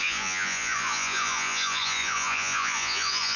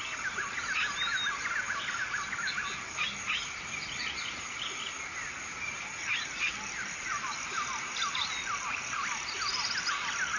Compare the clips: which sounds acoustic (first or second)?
second